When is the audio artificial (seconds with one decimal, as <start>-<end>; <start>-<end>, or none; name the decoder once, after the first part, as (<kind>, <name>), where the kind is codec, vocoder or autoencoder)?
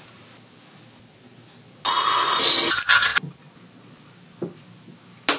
none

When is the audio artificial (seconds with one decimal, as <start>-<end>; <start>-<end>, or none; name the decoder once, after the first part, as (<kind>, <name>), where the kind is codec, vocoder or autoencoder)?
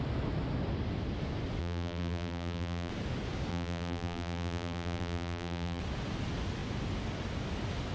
1.6-2.9 (vocoder, BigVGAN v2); 3.5-5.8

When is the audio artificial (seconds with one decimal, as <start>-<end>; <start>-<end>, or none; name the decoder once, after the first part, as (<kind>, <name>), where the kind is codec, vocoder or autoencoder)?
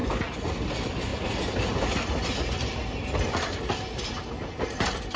none